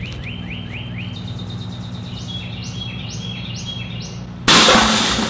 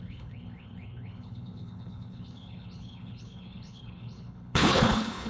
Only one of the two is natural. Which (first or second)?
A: first